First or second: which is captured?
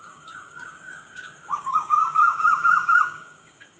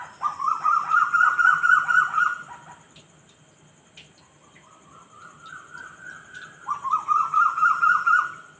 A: second